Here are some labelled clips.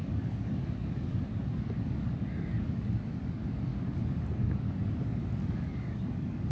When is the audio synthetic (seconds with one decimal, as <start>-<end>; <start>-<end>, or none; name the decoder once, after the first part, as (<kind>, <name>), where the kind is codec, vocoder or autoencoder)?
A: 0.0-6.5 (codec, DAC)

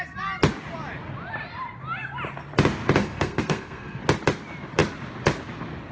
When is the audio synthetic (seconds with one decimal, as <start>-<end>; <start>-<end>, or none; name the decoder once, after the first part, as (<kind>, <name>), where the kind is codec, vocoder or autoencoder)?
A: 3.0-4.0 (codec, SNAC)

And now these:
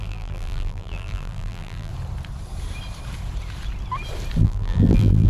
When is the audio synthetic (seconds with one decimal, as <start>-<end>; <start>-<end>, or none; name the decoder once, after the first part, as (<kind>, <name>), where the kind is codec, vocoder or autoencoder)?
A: 0.0-1.9 (vocoder, BigVGAN v2); 4.4-5.3

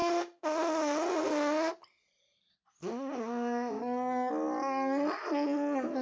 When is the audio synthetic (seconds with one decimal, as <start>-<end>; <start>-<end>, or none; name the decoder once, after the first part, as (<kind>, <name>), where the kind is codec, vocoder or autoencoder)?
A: 0.0-1.7 (autoencoder, DAC-VAE); 2.8-3.8

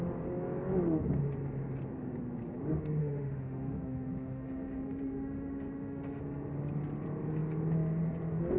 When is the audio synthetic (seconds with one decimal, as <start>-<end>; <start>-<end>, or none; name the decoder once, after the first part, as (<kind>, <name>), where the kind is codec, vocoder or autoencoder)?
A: 3.0-6.2 (autoencoder, DAC-VAE)

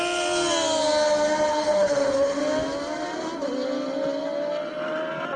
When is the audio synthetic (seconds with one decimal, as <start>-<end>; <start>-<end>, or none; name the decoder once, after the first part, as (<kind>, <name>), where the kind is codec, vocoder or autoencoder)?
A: 1.5-2.4 (codec, HILCodec)